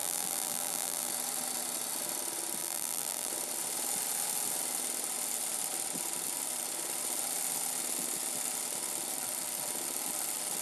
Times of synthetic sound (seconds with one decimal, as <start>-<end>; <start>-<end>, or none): 0.0-1.1; 2.6-3.3